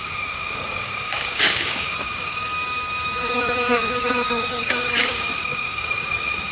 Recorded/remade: remade